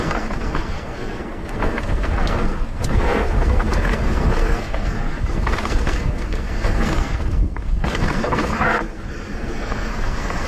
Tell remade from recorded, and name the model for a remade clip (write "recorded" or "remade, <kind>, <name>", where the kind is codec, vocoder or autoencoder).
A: remade, codec, SNAC